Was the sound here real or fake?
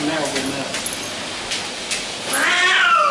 real